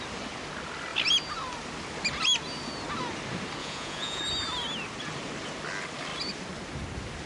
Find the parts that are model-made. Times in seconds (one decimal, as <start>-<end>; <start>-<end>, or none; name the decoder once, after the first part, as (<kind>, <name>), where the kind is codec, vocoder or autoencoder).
3.6-4.2 (vocoder, Vocos)